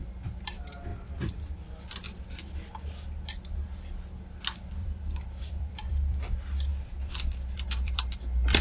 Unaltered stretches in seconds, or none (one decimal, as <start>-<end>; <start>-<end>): 0.0-4.8; 6.3-6.7